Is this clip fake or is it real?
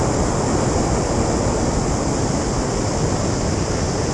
real